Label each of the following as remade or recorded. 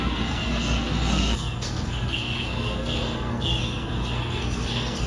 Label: remade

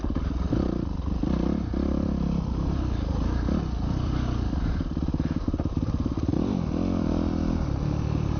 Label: remade